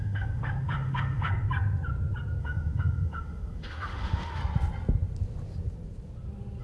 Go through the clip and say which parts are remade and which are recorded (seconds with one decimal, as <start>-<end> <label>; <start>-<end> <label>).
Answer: 0.0-1.3 remade; 1.3-2.4 recorded; 2.4-4.4 remade; 4.4-6.6 recorded